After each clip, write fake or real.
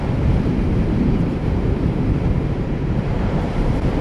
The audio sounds fake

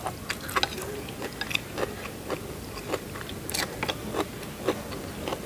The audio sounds real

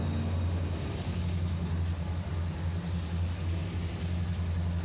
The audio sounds real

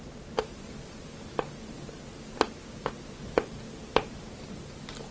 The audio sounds real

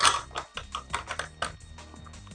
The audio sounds real